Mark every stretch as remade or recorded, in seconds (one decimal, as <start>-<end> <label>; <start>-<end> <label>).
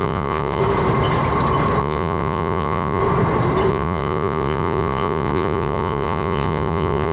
0.0-0.6 remade; 0.6-1.8 recorded; 1.8-3.0 remade; 3.0-3.7 recorded; 3.7-7.1 remade